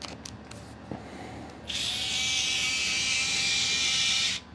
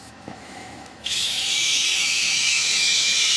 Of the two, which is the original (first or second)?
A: first